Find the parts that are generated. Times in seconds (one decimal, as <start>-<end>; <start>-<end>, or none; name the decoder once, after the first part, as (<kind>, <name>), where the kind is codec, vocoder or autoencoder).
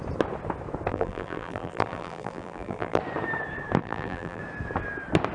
0.9-3.0 (vocoder, BigVGAN v2); 3.8-4.4